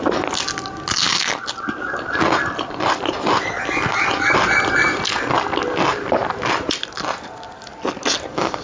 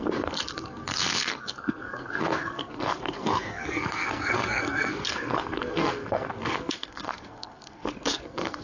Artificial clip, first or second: second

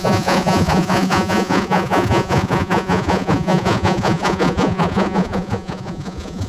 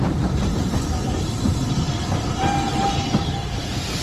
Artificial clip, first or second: first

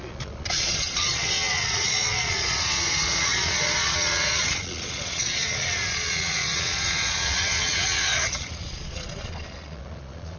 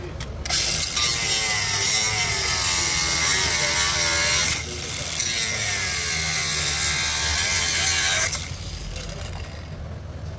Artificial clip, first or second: first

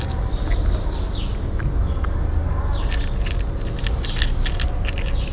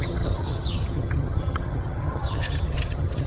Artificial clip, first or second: second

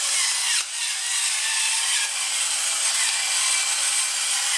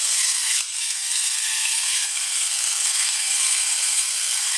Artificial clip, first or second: second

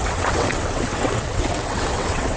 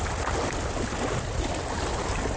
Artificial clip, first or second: first